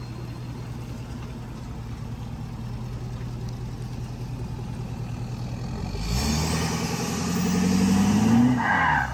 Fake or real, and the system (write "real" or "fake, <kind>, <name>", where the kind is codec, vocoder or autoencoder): real